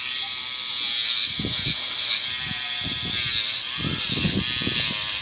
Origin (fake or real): real